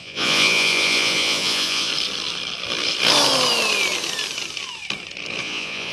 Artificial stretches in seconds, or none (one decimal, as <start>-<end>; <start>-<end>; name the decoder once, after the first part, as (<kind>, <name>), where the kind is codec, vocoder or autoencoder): 0.0-1.9 (vocoder, Vocos); 5.4-5.9